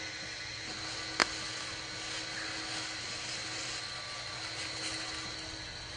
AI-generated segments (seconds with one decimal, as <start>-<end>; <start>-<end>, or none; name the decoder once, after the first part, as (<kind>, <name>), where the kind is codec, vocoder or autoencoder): none